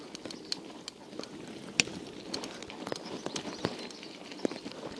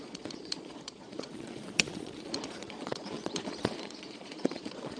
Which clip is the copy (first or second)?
second